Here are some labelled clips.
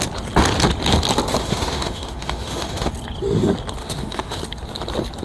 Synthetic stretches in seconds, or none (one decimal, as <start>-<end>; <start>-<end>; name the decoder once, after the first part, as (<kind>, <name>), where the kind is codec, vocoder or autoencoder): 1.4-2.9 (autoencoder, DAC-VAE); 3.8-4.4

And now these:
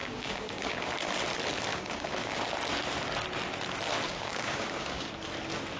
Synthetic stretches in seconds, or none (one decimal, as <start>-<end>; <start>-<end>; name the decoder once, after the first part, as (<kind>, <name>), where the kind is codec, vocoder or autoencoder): 0.0-0.9 (codec, DAC); 1.7-2.5; 4.1-5.1

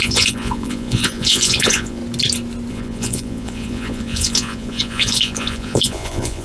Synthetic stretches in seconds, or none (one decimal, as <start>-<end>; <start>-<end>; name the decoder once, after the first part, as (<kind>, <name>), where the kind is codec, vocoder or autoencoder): 0.0-2.0 (vocoder, Vocos); 2.7-6.4

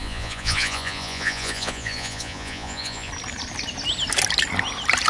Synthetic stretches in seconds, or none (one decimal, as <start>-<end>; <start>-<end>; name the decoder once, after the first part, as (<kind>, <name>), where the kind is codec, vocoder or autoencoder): 0.0-3.1 (vocoder, Vocos)

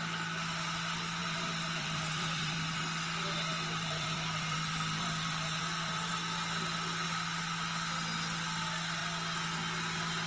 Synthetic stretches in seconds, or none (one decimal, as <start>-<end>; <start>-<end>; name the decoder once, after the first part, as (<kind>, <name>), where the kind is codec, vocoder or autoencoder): 1.2-2.8 (vocoder, BigVGAN v2); 3.5-6.1